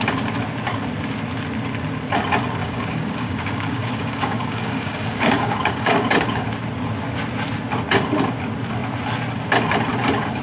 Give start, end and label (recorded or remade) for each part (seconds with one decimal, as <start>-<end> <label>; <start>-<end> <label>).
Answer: 0.0-2.6 recorded; 2.6-6.5 remade; 6.5-10.4 recorded